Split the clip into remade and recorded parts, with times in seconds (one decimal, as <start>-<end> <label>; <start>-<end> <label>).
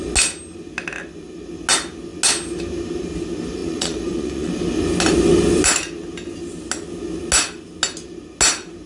0.0-3.6 recorded; 3.6-4.6 remade; 4.6-8.9 recorded